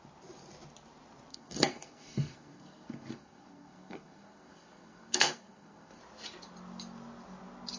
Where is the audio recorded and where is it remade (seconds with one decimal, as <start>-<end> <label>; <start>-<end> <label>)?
0.0-1.3 recorded; 1.3-6.0 remade; 6.0-7.8 recorded